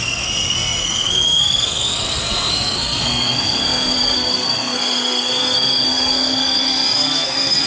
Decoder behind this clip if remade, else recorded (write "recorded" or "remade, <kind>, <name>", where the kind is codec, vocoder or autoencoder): remade, codec, SNAC